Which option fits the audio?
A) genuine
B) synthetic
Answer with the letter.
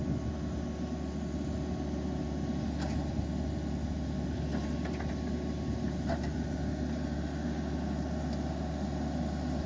A